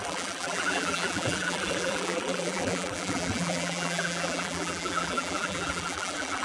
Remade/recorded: remade